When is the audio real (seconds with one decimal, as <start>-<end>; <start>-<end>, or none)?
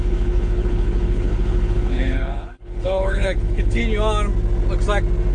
3.8-5.3